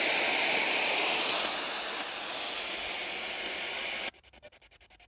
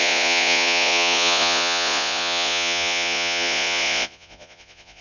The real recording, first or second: first